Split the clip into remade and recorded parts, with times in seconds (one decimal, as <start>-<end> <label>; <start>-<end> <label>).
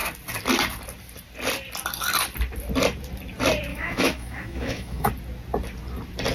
0.0-3.7 recorded; 3.7-5.1 remade; 5.1-6.3 recorded